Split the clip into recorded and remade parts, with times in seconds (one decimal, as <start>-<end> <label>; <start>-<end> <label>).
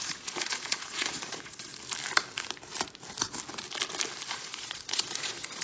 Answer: 0.0-1.7 remade; 1.7-4.3 recorded; 4.3-5.6 remade